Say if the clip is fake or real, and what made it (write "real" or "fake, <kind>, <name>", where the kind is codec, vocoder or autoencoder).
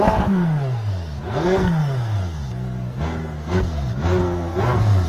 fake, codec, SNAC